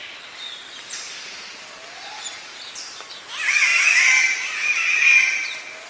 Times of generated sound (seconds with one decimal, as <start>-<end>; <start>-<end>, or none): 0.0-5.9